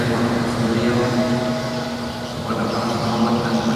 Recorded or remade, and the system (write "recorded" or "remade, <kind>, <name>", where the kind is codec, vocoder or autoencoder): recorded